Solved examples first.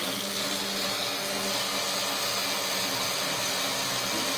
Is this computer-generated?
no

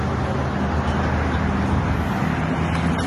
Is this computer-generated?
no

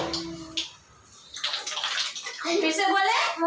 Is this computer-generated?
no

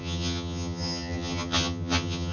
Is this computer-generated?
yes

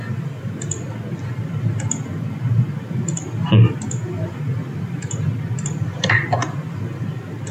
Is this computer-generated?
no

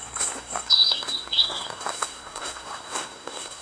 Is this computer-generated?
yes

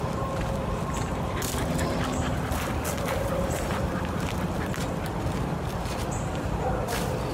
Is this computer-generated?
no